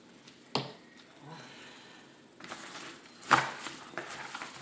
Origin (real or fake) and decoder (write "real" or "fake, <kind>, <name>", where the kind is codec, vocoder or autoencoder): real